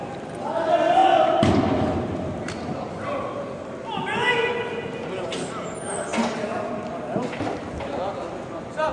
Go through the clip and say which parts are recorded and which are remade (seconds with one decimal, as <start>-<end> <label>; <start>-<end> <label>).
0.0-8.9 recorded